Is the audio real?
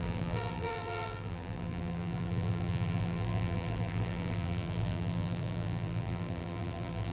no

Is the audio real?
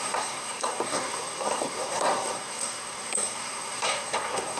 no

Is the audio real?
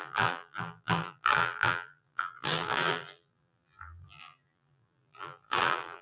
no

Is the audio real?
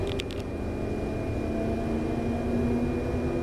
yes